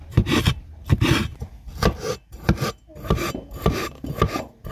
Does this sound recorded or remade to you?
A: recorded